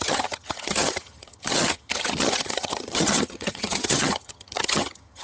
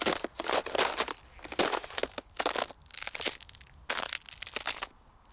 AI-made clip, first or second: first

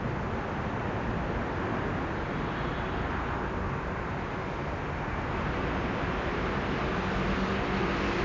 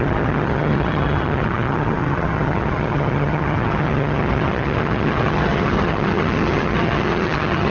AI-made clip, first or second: second